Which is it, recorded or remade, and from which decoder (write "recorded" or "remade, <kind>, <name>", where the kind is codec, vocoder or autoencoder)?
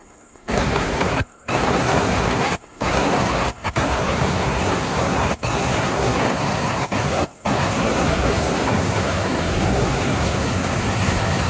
remade, codec, SNAC